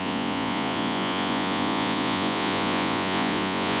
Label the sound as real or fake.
fake